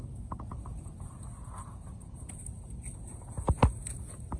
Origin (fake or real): fake